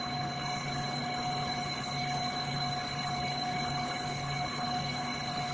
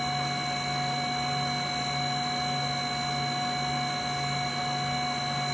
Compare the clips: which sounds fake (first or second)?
first